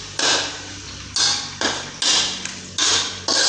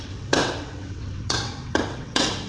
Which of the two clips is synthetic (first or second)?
second